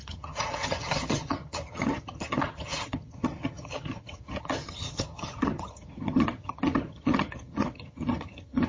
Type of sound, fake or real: fake